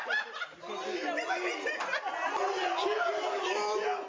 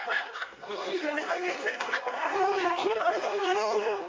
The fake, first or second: second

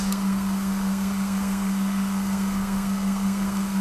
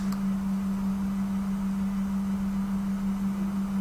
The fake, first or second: first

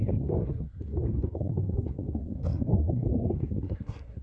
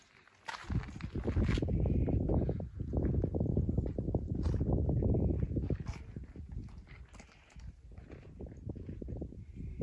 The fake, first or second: first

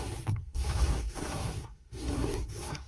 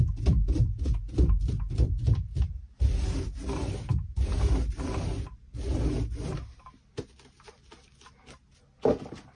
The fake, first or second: first